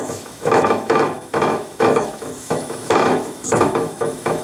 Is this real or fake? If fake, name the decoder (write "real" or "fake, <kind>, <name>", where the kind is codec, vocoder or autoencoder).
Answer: fake, autoencoder, DAC-VAE